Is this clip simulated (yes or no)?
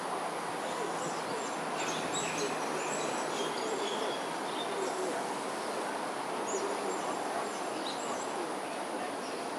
no